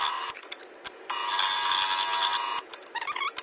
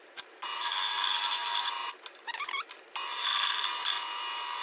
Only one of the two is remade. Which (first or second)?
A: second